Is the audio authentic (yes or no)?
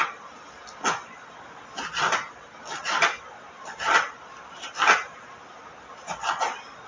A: yes